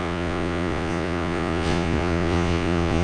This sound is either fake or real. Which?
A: fake